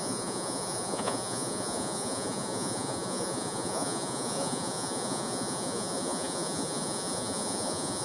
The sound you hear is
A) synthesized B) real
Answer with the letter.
A